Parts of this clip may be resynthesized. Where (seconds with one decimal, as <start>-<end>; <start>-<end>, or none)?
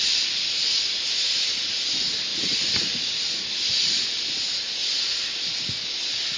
none